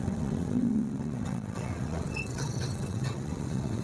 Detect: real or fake fake